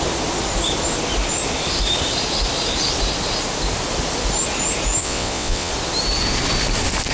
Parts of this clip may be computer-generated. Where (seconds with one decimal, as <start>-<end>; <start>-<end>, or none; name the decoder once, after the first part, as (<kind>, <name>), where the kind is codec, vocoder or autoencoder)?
5.0-5.7 (vocoder, WaveNeXt)